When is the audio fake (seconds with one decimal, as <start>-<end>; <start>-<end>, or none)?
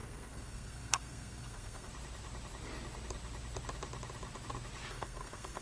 0.0-1.9; 4.9-5.6